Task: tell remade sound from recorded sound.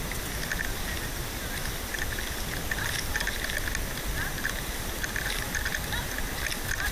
recorded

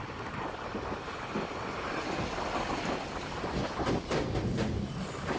recorded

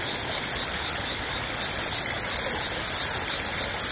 recorded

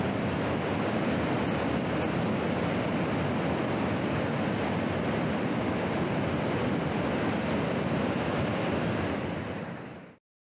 recorded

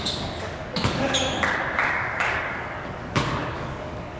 remade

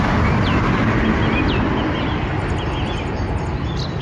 recorded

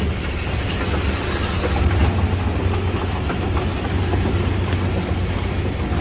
recorded